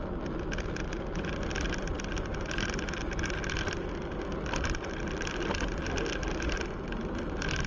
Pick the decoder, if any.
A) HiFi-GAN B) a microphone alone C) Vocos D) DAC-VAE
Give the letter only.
B